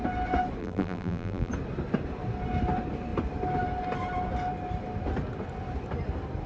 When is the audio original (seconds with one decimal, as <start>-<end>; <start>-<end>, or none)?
0.0-0.6; 1.5-6.5